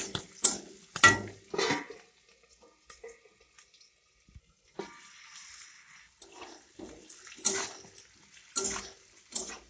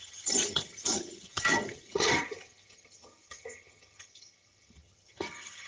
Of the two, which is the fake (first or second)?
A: second